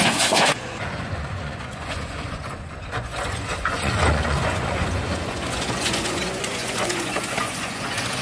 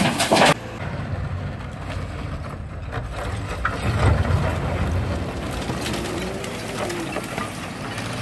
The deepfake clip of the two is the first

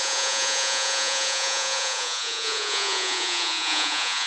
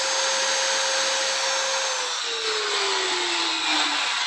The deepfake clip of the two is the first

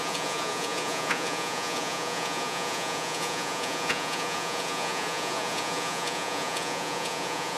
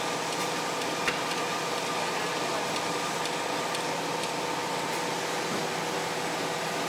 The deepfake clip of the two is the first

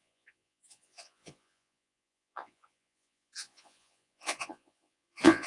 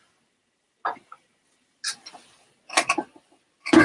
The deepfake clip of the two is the first